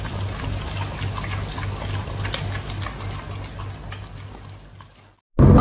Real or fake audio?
real